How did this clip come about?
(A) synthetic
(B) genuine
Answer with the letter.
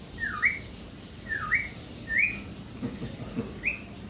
B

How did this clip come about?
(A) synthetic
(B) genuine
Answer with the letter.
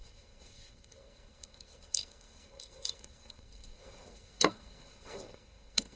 A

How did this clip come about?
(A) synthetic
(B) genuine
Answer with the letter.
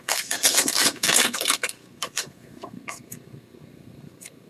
A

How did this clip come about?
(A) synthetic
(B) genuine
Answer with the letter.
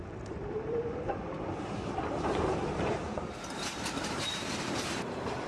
A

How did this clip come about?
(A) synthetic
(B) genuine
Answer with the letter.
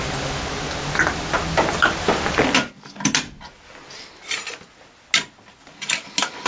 B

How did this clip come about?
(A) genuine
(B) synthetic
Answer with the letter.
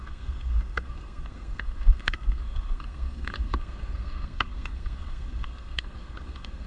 B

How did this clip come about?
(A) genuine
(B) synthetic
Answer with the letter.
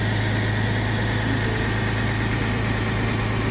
A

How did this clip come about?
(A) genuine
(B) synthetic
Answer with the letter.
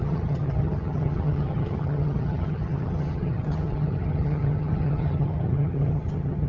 B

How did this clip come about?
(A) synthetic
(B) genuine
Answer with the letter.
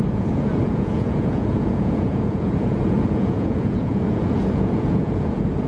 A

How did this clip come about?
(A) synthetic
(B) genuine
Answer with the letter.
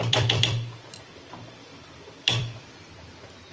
A